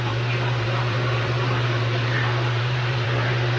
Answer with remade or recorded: remade